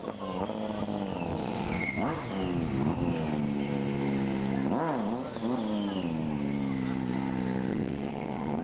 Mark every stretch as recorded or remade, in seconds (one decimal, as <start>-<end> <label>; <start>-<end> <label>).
0.0-1.3 recorded; 1.3-1.9 remade; 1.9-7.7 recorded; 7.7-8.6 remade